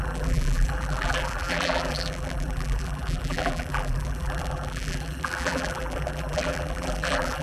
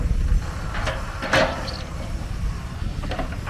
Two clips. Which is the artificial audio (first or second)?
first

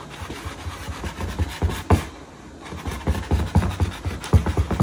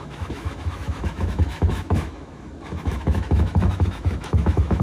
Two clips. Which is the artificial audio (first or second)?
second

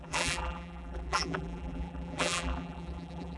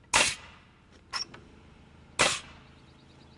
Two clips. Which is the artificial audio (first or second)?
first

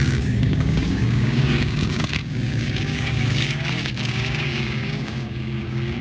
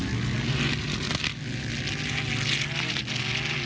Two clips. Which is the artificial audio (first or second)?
first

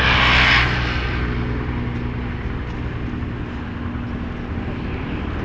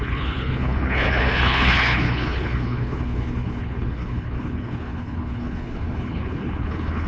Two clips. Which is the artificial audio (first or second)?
second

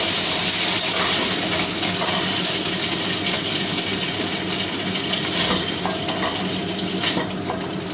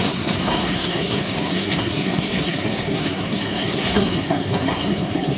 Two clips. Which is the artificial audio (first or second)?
second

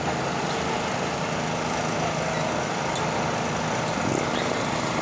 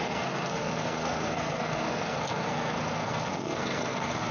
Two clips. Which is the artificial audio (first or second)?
second